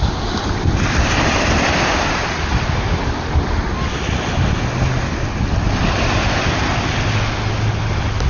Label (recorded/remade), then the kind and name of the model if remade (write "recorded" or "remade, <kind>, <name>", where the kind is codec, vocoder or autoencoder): recorded